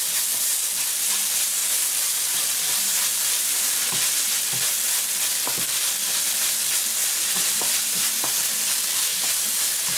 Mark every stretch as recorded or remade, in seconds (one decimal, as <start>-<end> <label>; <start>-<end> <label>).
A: 0.0-1.6 recorded; 1.6-3.8 remade; 3.8-7.0 recorded; 7.0-8.5 remade; 8.5-9.1 recorded; 9.1-10.0 remade